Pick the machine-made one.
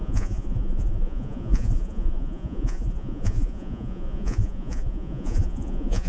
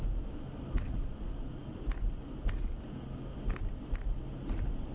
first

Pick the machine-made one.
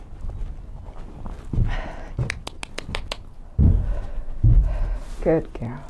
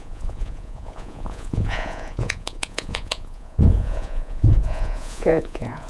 second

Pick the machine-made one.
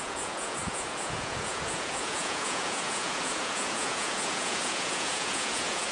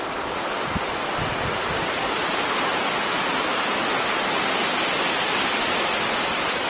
first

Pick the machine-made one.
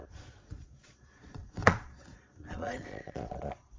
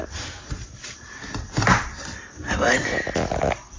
first